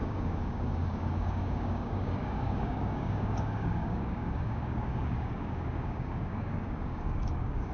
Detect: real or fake fake